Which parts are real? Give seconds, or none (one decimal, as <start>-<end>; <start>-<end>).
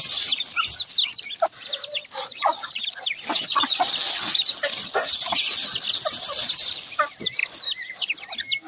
0.0-2.2; 2.8-3.3; 3.9-8.7